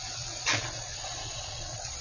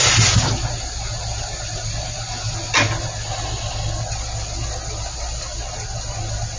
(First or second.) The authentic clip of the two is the second